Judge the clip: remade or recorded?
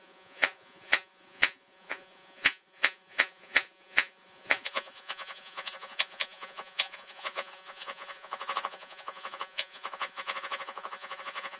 remade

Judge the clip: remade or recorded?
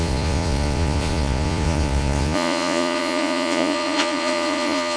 remade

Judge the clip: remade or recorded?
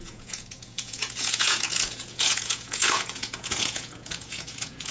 remade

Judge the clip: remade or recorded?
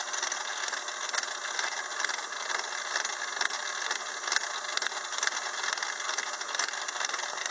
recorded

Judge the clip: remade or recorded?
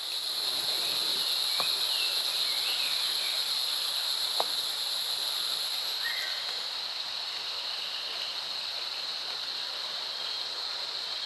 recorded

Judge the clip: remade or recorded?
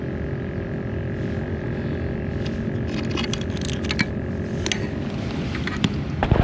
recorded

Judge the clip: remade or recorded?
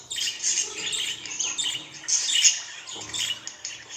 recorded